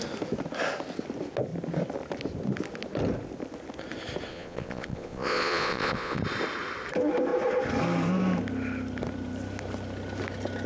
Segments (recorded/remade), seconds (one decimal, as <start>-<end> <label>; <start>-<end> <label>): 0.0-4.3 recorded; 4.3-6.2 remade; 6.2-10.7 recorded